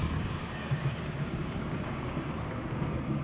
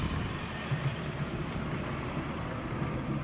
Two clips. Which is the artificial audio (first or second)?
first